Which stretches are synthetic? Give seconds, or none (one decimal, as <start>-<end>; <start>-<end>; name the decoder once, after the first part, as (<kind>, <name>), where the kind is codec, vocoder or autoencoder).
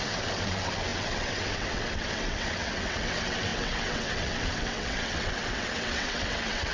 0.0-6.7 (vocoder, WaveNeXt)